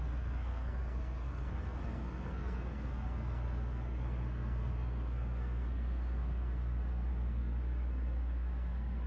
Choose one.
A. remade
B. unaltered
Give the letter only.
A